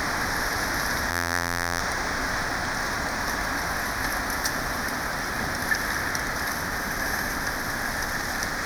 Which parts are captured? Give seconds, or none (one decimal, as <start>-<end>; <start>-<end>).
0.0-1.1; 1.8-8.7